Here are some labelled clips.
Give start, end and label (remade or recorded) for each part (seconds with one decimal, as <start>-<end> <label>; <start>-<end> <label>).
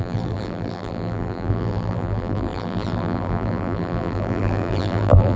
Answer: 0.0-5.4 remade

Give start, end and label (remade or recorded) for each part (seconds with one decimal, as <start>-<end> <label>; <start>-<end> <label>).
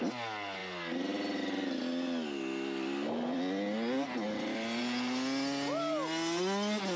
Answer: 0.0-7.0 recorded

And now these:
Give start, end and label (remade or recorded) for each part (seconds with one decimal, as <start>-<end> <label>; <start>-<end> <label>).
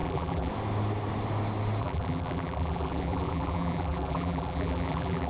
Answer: 0.0-0.5 remade; 0.5-1.8 recorded; 1.8-5.3 remade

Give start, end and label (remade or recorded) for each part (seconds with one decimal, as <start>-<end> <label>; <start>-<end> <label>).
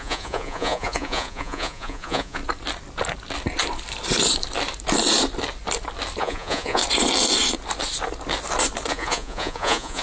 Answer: 0.0-2.4 remade; 2.4-6.2 recorded; 6.2-6.8 remade; 6.8-8.9 recorded; 8.9-10.0 remade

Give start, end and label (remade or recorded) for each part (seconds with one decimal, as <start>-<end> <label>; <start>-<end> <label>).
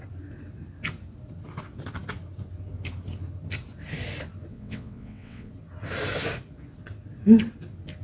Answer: 0.0-4.5 recorded; 4.5-5.5 remade; 5.5-8.0 recorded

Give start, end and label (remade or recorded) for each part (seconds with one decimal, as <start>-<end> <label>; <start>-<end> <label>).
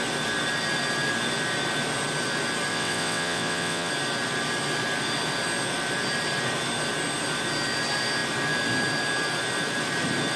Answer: 0.0-2.7 recorded; 2.7-3.9 remade; 3.9-10.4 recorded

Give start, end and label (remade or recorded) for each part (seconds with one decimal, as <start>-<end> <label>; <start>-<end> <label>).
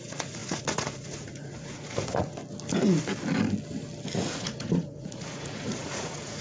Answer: 0.0-2.4 remade; 2.4-4.2 recorded; 4.2-6.4 remade